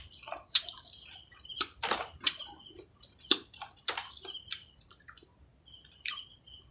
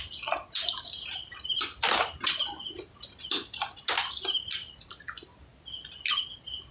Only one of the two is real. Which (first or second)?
second